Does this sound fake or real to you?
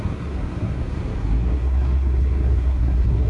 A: fake